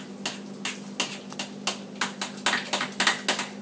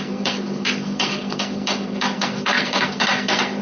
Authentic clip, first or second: first